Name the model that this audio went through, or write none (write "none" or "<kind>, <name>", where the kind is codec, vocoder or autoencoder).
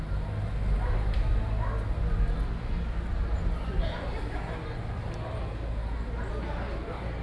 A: none